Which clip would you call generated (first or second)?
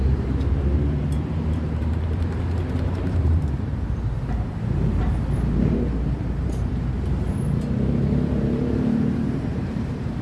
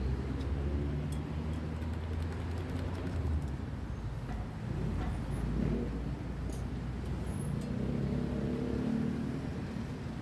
first